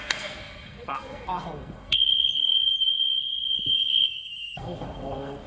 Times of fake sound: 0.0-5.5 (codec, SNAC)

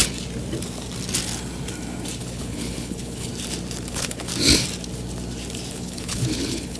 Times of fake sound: 2.2-3.3 (codec, HILCodec); 3.9-4.3; 5.7-6.8

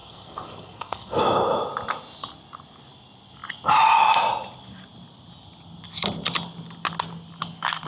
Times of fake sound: 0.0-1.2 (codec, SNAC)

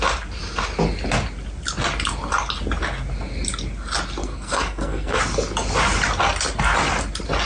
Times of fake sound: 4.2-5.2 (codec, SNAC)

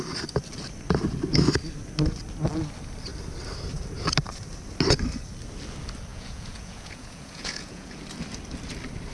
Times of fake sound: 6.1-8.0 (vocoder, Vocos)